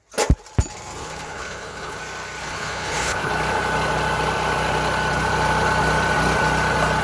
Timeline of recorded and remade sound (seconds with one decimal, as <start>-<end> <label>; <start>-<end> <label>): 0.0-1.0 recorded; 1.0-2.0 remade; 2.0-2.4 recorded; 2.4-3.3 remade; 3.3-7.0 recorded